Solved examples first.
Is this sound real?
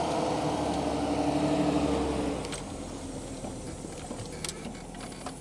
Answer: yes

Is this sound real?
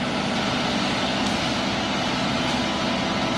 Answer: yes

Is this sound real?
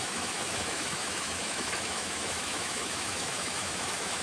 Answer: no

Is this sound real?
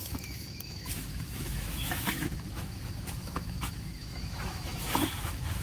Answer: no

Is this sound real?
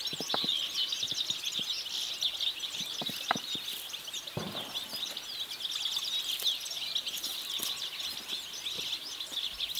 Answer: yes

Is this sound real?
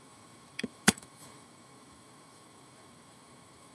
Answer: no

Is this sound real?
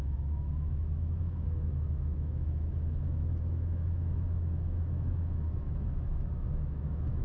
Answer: no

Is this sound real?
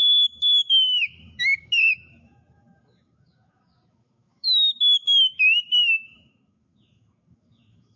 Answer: no